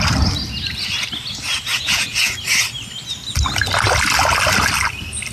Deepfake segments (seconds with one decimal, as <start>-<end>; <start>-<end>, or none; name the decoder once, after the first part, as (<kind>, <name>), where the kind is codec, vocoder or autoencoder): 1.7-2.3 (vocoder, Vocos)